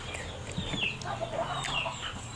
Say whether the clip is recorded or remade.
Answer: recorded